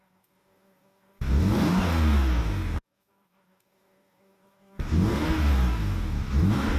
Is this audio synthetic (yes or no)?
yes